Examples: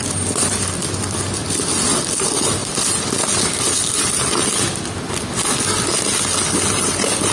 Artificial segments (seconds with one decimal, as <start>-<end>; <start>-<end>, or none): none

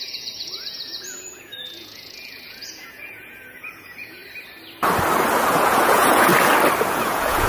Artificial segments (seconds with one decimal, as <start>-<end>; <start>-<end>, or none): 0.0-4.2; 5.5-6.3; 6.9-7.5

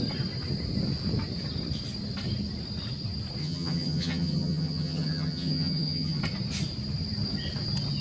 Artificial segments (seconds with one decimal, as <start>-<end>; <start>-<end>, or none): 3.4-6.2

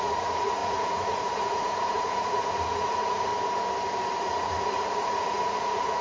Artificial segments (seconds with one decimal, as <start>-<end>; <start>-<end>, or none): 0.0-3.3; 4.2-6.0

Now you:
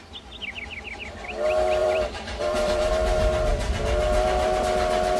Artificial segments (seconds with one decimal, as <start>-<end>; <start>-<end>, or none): 1.8-2.9